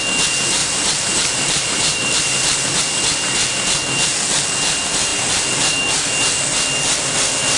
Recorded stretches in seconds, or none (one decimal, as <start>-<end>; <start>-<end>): 0.0-0.6; 2.8-5.1; 5.8-7.6